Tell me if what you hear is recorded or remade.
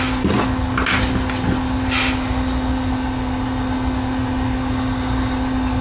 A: recorded